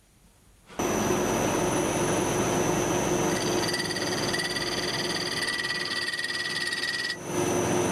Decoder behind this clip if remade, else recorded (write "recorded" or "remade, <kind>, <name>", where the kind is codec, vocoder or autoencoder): recorded